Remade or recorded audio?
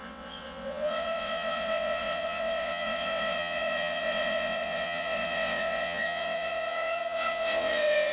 remade